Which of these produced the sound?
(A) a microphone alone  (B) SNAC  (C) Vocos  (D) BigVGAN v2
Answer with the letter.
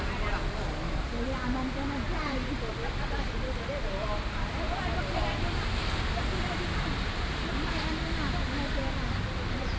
A